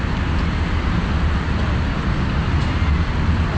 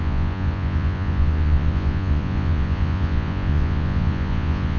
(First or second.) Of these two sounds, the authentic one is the first